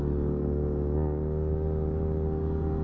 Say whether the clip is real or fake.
real